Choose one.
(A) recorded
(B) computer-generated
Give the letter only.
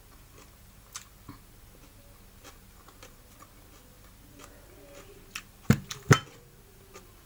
A